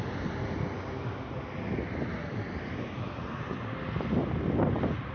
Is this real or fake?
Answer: real